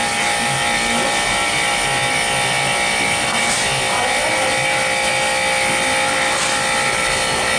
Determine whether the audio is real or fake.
real